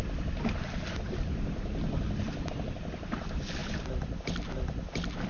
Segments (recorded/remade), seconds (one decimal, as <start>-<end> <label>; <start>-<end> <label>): 0.0-5.3 recorded